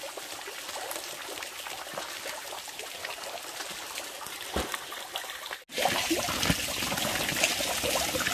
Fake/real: real